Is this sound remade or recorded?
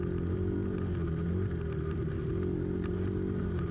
recorded